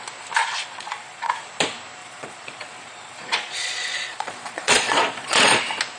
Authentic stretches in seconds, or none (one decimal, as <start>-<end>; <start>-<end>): 0.0-0.4; 1.3-2.0; 5.6-6.0